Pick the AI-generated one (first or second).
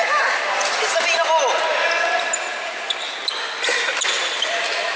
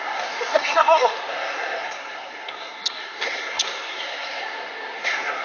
second